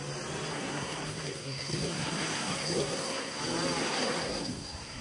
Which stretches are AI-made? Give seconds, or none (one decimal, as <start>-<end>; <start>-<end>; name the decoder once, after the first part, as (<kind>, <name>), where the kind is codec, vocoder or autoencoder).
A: 0.5-3.4 (codec, SNAC); 3.8-5.0

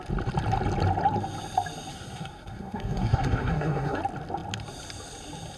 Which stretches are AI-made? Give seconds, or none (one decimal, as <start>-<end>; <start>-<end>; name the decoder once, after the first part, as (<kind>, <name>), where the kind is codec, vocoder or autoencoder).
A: 1.9-4.0 (codec, SNAC)

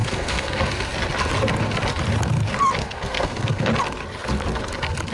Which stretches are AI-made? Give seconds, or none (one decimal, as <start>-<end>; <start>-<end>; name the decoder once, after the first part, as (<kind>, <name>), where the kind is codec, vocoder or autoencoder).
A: 0.0-0.7 (codec, SNAC); 2.8-3.7

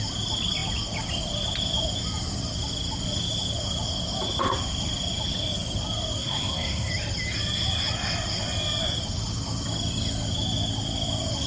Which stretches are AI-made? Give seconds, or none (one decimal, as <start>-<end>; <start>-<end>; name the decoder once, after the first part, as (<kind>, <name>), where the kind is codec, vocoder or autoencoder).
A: 6.2-6.9 (codec, SNAC)